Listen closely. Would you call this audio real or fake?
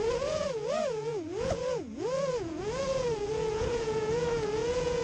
fake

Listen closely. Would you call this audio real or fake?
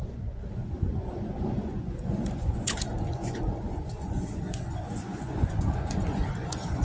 fake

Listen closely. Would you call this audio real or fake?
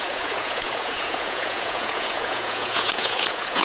fake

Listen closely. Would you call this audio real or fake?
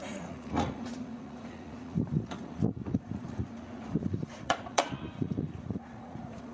fake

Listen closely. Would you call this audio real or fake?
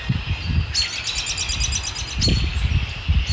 real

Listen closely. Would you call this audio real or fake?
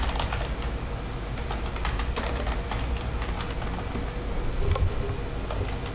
real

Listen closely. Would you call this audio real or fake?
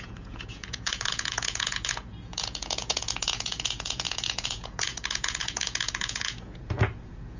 fake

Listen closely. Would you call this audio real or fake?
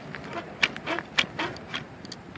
real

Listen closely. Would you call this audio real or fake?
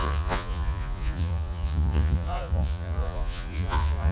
fake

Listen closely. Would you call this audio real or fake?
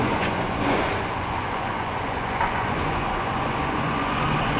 fake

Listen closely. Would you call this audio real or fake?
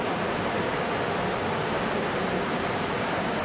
real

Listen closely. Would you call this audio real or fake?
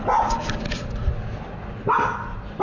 real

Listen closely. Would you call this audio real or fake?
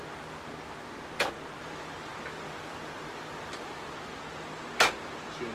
real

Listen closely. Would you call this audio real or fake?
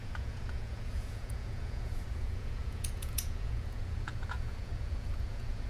fake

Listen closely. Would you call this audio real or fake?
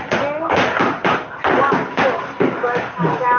real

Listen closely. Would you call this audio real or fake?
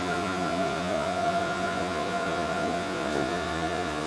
fake